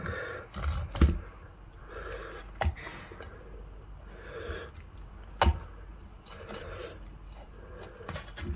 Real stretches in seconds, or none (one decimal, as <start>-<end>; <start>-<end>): 0.0-5.9; 7.7-8.6